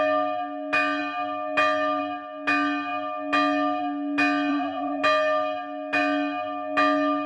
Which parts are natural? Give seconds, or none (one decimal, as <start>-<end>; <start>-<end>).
0.0-4.5; 5.0-7.3